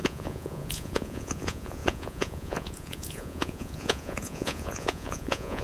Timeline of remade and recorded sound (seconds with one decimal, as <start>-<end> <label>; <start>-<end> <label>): 0.0-5.6 remade

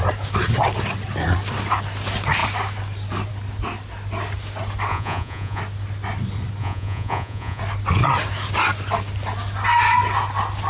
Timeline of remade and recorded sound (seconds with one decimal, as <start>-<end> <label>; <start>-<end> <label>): 0.0-4.9 recorded; 4.9-5.6 remade; 5.6-6.6 recorded; 6.6-7.6 remade; 7.6-10.7 recorded